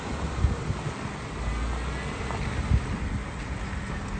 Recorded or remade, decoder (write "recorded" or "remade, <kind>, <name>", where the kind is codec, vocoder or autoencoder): recorded